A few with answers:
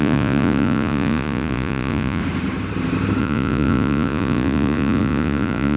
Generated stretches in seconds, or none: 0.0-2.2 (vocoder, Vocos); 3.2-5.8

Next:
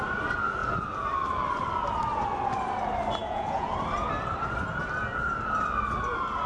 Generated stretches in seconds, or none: 3.2-3.7 (vocoder, Vocos)

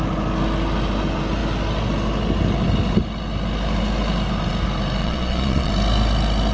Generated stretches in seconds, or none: 5.0-5.7 (vocoder, Vocos)

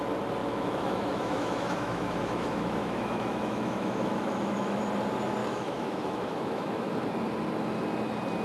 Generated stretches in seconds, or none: 0.4-4.8 (autoencoder, DAC-VAE); 5.4-6.9

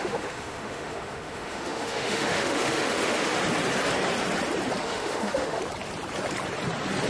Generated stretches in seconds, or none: 0.0-3.4 (autoencoder, DAC-VAE); 4.8-5.6

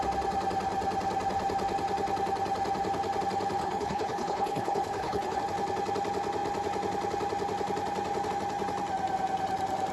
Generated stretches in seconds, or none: 3.6-5.4 (codec, HILCodec)

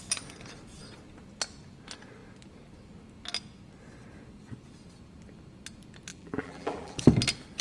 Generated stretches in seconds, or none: 6.1-7.0 (vocoder, BigVGAN v2)

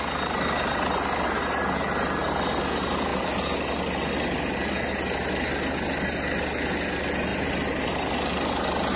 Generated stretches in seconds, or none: 3.1-3.7 (vocoder, BigVGAN v2); 7.3-8.1